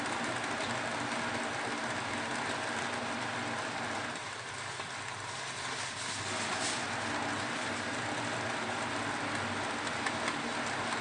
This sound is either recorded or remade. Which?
recorded